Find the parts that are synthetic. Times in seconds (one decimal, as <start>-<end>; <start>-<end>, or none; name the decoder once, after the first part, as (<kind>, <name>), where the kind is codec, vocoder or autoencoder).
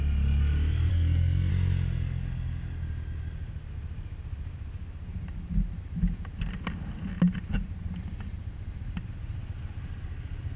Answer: 0.9-1.5 (codec, SNAC)